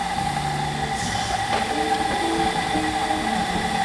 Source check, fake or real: real